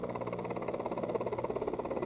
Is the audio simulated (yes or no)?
no